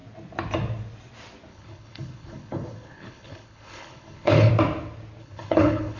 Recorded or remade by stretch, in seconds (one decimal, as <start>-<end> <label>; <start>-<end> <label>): 0.0-1.5 recorded; 1.5-4.5 remade; 4.5-5.2 recorded; 5.2-6.0 remade